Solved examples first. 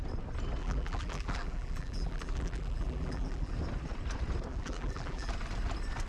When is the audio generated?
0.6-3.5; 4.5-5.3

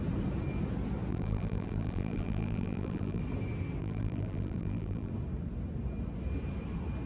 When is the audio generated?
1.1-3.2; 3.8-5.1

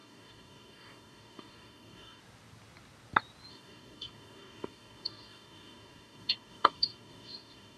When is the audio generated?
0.0-2.2; 3.5-7.8

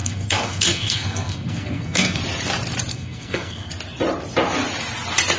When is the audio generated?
0.0-2.2; 2.9-3.7

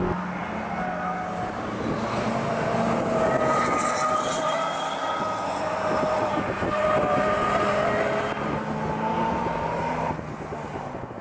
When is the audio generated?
none

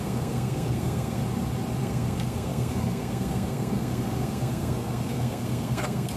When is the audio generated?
0.0-1.2; 1.8-6.2

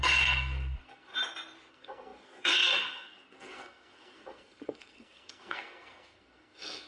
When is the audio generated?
0.0-1.1; 1.7-6.9